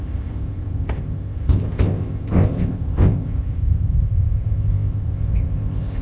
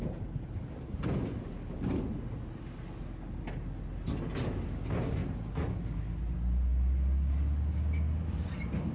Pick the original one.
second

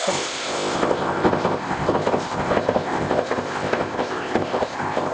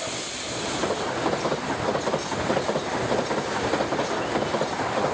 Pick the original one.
second